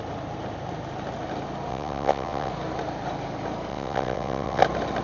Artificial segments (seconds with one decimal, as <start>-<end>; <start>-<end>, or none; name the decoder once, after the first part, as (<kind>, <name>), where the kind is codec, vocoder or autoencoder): 1.7-2.5 (vocoder, WaveNeXt); 3.7-4.6